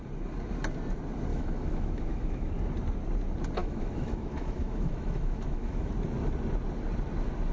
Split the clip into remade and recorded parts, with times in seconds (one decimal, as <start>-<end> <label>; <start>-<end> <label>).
0.0-1.3 recorded; 1.3-2.5 remade; 2.5-3.6 recorded; 3.6-5.9 remade; 5.9-7.5 recorded